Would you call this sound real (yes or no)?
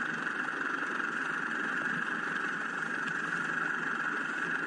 yes